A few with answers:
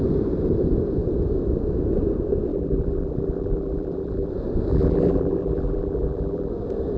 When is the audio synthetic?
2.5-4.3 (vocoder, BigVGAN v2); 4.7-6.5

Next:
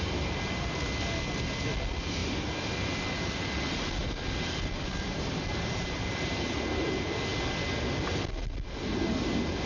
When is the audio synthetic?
2.2-2.7 (vocoder, BigVGAN v2); 4.0-6.7